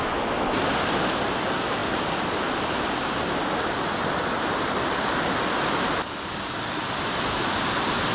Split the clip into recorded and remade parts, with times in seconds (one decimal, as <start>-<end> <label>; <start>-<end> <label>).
0.0-8.1 recorded